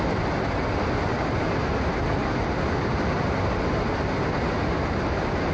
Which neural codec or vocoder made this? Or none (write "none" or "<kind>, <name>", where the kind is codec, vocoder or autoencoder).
none